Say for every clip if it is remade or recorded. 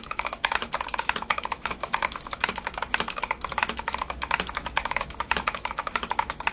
remade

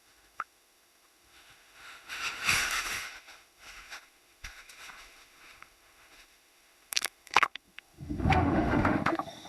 remade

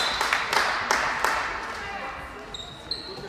recorded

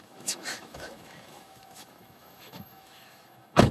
remade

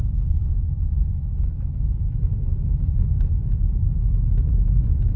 remade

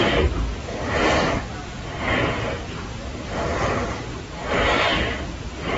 recorded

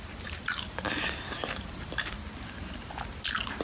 recorded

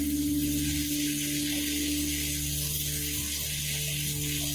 recorded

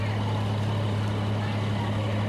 recorded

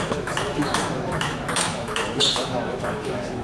remade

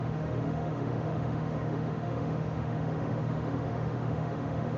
remade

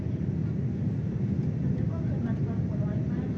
recorded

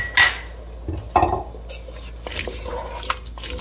recorded